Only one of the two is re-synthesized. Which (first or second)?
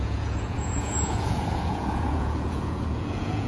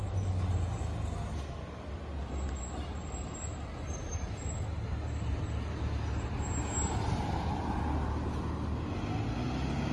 first